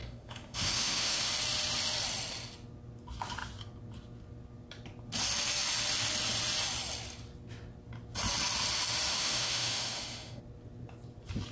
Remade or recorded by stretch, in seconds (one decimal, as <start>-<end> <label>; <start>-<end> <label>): 0.0-1.3 remade; 1.3-9.1 recorded; 9.1-10.4 remade; 10.4-11.5 recorded